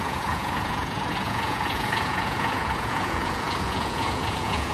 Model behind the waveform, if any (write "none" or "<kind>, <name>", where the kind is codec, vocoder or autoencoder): vocoder, Vocos